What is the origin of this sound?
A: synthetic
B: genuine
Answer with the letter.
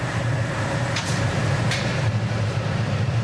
A